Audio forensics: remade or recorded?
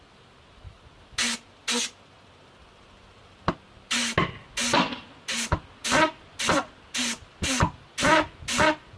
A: recorded